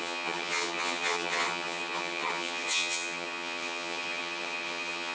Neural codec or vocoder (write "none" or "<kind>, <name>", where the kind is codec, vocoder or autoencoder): vocoder, HiFi-GAN